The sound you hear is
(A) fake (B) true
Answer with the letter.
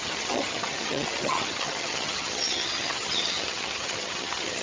A